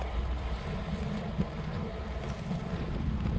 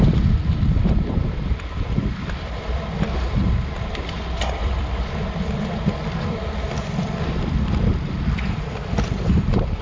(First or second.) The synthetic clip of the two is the second